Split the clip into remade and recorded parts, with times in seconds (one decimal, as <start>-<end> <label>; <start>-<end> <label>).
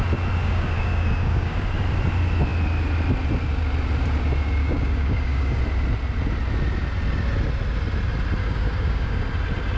0.0-0.4 recorded; 0.4-1.6 remade; 1.6-4.6 recorded; 4.6-5.6 remade; 5.6-8.4 recorded; 8.4-9.2 remade; 9.2-9.8 recorded